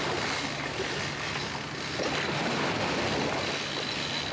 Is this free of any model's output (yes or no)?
yes